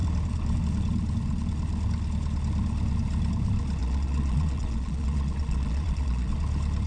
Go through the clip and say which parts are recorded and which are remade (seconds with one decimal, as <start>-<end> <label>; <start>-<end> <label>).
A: 0.0-3.8 recorded; 3.8-6.3 remade; 6.3-6.9 recorded